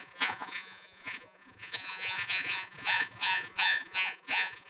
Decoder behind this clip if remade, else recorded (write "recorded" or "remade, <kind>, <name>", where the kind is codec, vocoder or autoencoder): remade, vocoder, Vocos